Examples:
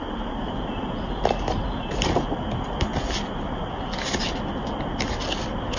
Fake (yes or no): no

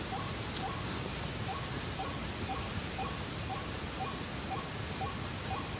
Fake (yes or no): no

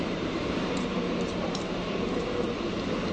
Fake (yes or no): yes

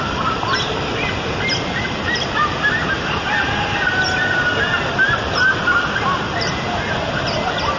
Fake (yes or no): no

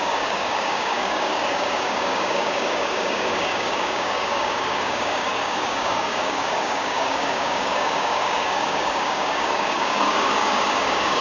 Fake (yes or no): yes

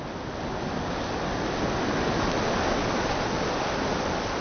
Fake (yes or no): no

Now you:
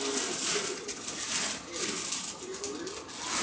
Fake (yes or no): no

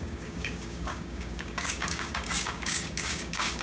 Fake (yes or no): yes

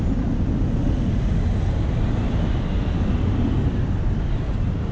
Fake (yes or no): yes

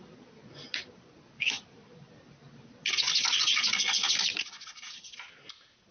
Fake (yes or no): no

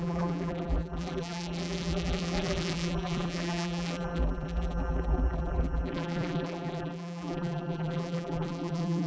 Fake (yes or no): yes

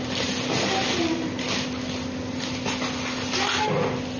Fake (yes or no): no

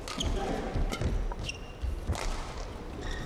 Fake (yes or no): no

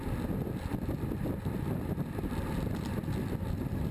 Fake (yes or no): no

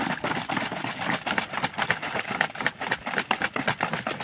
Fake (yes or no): no